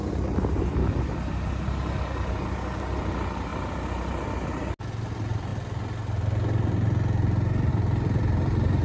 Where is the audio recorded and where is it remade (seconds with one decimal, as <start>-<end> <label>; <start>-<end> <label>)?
0.0-8.8 recorded